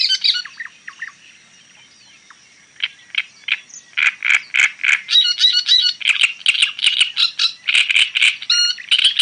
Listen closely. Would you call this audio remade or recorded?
recorded